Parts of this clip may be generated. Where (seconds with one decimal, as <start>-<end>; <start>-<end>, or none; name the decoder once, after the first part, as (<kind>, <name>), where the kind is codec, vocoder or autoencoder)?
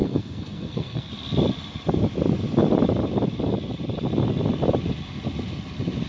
0.0-1.1 (codec, SNAC)